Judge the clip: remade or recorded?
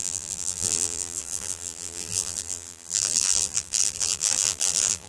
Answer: remade